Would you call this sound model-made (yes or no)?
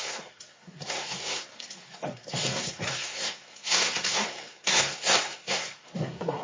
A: yes